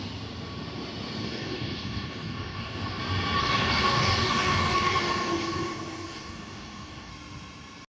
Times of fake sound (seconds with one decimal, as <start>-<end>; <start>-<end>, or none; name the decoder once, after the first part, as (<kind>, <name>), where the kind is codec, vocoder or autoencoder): 1.2-3.0 (codec, DAC); 3.4-7.1